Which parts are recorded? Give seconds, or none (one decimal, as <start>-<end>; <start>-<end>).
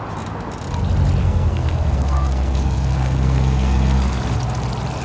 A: 0.0-1.2; 4.2-5.0